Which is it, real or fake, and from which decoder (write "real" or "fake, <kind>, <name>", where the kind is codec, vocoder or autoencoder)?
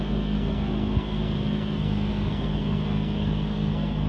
fake, codec, SNAC